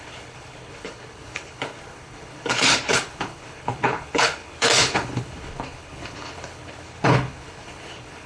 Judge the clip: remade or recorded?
remade